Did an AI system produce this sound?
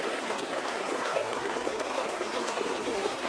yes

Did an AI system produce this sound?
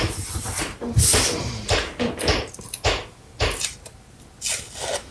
no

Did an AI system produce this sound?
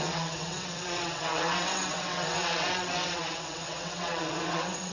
yes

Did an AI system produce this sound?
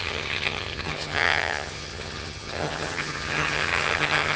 yes